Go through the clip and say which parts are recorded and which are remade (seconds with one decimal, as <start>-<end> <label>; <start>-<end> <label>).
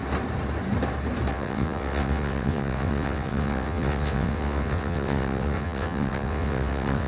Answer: 0.0-1.3 recorded; 1.3-7.1 remade